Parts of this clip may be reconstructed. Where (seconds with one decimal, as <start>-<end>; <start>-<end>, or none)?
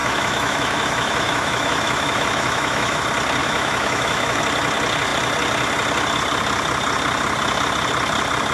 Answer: 0.0-3.0; 3.4-4.4